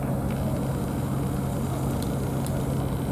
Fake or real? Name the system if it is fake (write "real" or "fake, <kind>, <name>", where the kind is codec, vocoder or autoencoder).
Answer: real